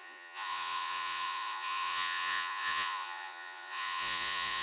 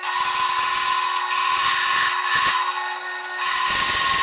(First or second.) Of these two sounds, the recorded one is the second